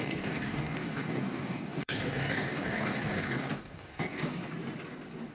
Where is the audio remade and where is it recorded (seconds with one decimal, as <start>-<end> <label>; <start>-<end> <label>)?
0.0-4.2 remade; 4.2-5.3 recorded